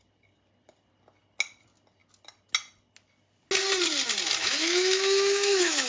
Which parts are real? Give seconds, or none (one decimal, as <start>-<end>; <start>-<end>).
0.0-4.4